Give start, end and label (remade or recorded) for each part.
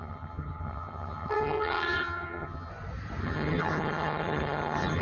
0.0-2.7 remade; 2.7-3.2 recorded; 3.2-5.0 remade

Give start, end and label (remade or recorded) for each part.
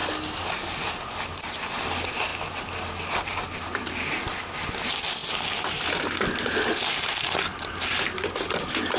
0.0-9.0 recorded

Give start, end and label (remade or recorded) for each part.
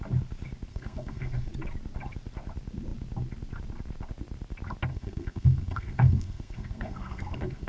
0.0-0.7 recorded; 0.7-1.5 remade; 1.5-4.9 recorded; 4.9-7.7 remade